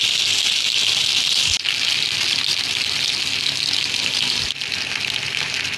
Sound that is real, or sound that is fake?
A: real